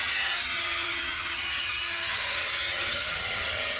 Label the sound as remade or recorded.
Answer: remade